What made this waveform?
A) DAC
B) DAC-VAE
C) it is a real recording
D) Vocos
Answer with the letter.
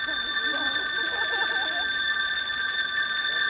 C